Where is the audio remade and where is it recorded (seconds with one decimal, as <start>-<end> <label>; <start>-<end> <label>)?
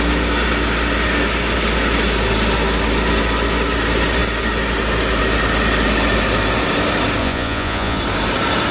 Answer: 0.0-7.2 recorded; 7.2-8.0 remade; 8.0-8.7 recorded